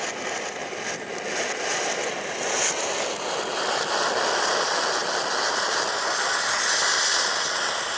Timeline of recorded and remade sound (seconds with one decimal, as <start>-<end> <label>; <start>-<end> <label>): 0.0-8.0 recorded